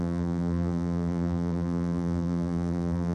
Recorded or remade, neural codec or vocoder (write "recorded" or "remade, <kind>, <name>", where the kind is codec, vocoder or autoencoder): remade, vocoder, BigVGAN v2